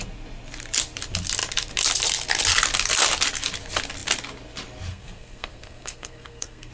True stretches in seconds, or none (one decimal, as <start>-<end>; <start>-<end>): 0.0-4.9